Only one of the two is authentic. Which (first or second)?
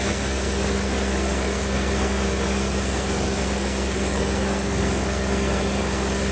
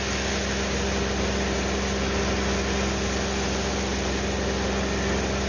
second